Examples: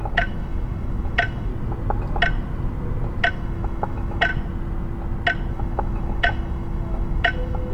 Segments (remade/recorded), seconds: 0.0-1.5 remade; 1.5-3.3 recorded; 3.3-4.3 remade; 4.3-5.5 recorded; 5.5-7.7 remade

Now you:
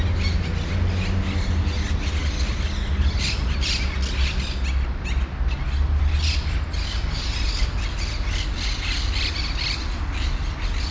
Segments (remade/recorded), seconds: 0.0-10.9 recorded

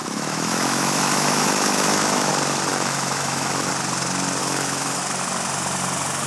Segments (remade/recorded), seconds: 0.0-2.3 remade; 2.3-2.7 recorded; 2.7-3.7 remade; 3.7-4.4 recorded; 4.4-5.0 remade; 5.0-6.3 recorded

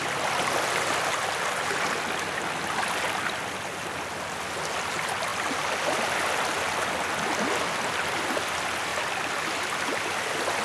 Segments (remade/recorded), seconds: 0.0-5.3 recorded; 5.3-6.1 remade; 6.1-10.6 recorded

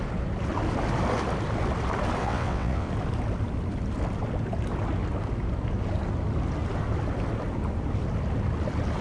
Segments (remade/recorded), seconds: 0.0-2.2 recorded; 2.2-2.9 remade; 2.9-9.0 recorded

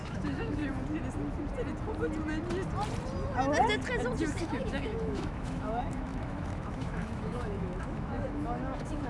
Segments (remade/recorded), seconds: 0.0-0.6 remade; 0.6-4.3 recorded; 4.3-9.1 remade

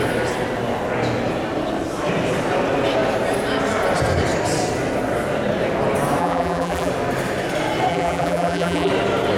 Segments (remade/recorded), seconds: 0.0-6.2 recorded; 6.2-6.9 remade; 6.9-7.9 recorded; 7.9-8.9 remade; 8.9-9.4 recorded

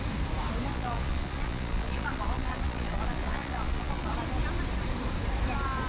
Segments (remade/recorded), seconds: 0.0-0.7 recorded; 0.7-4.1 remade; 4.1-5.9 recorded